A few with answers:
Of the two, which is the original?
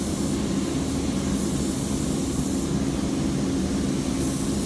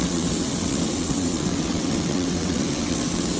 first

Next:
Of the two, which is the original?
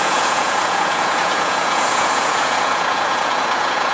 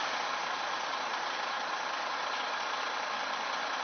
second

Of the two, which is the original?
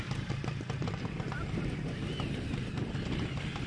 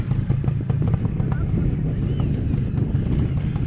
second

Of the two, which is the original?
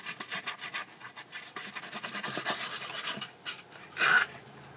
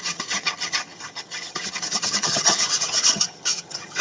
first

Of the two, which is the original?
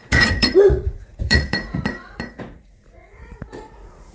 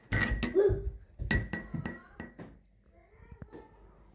second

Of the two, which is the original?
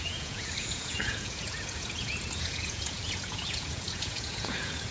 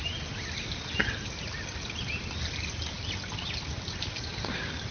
second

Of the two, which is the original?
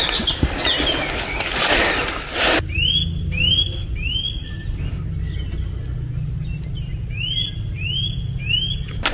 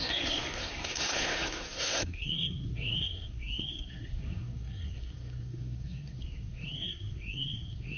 first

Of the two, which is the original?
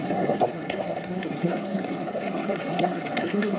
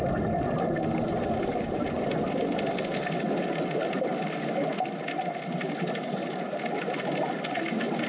second